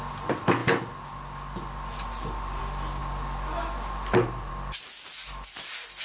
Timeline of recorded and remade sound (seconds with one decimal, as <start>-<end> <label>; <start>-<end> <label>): 0.0-6.0 recorded